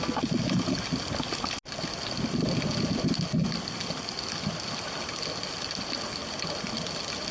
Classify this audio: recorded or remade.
recorded